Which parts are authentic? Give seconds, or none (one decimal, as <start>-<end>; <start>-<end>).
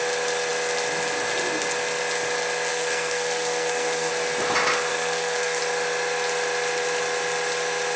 0.0-2.7; 4.1-4.9; 5.6-8.0